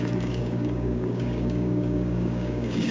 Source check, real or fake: fake